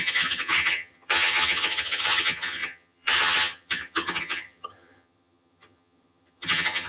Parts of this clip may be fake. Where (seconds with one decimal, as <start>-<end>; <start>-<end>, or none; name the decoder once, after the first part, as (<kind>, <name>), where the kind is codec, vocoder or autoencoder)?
0.0-6.9 (vocoder, HiFi-GAN)